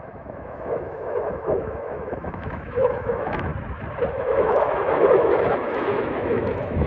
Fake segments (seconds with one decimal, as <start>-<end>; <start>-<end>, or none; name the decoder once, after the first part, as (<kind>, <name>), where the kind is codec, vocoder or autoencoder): 0.0-3.5 (autoencoder, DAC-VAE); 4.1-6.9